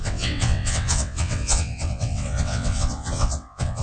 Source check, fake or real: fake